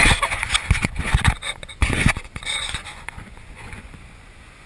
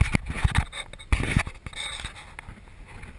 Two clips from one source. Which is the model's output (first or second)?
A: first